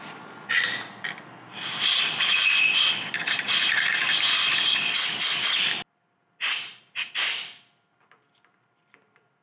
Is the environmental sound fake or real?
real